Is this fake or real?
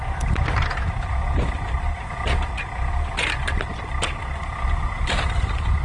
real